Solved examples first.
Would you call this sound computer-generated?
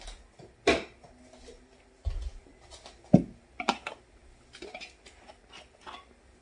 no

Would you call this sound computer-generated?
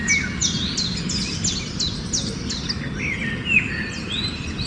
no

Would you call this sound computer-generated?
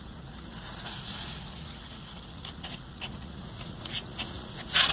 yes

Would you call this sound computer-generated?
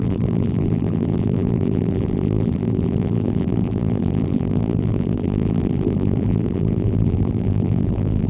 yes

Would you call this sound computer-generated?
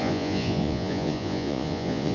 yes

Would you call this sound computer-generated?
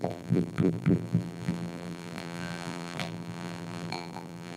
yes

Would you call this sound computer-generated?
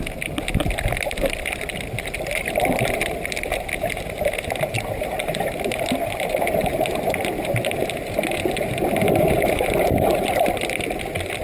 no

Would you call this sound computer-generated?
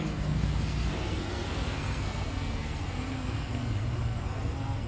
yes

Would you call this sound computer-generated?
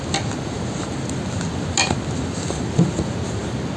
no